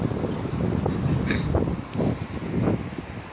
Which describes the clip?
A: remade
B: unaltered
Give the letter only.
B